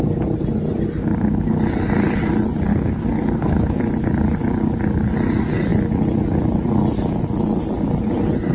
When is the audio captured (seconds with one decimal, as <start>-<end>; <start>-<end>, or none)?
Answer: 0.0-2.7; 3.8-8.5